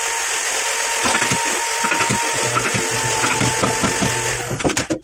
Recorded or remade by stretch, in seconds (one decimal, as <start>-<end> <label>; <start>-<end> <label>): 0.0-5.0 recorded

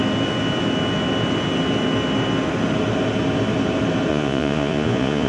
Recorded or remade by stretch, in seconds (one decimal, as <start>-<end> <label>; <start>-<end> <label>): 0.0-4.1 recorded; 4.1-5.3 remade

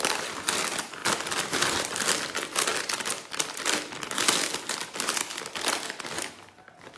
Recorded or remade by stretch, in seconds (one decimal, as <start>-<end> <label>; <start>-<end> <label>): 0.0-7.0 recorded

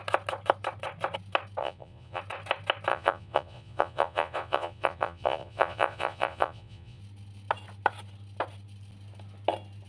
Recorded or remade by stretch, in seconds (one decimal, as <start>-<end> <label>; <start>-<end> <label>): 0.0-1.6 recorded; 1.6-2.2 remade; 2.2-2.9 recorded; 2.9-7.0 remade; 7.0-9.9 recorded

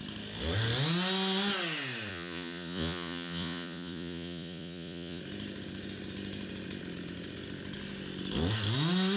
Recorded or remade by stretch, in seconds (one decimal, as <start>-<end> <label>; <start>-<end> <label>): 0.0-2.1 recorded; 2.1-5.2 remade; 5.2-9.2 recorded

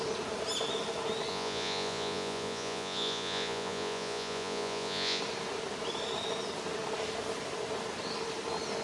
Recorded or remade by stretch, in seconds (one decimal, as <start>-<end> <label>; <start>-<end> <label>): 0.0-1.3 recorded; 1.3-5.2 remade; 5.2-8.8 recorded

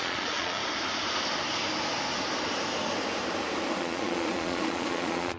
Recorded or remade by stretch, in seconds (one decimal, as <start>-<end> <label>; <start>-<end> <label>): 0.0-0.6 remade; 0.6-3.8 recorded; 3.8-5.4 remade